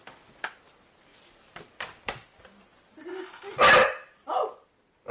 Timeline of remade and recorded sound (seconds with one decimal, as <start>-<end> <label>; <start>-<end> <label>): 0.0-5.1 recorded

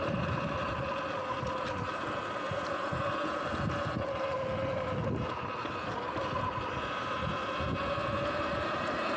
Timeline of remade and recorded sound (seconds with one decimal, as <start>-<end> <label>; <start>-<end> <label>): 0.0-9.2 recorded

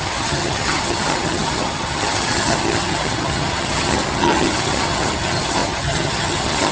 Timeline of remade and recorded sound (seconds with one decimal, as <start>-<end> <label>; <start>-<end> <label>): 0.0-6.7 remade

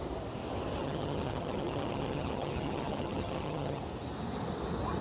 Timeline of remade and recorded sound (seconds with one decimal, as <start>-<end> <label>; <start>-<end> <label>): 0.0-0.8 recorded; 0.8-3.8 remade; 3.8-5.0 recorded

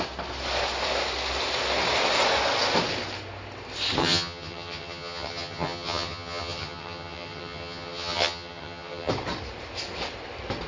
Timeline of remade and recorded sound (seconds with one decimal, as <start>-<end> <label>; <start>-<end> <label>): 0.0-4.0 recorded; 4.0-9.1 remade; 9.1-10.7 recorded